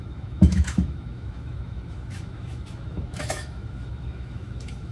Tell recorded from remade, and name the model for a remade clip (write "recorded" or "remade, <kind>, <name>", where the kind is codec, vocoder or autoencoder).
remade, autoencoder, DAC-VAE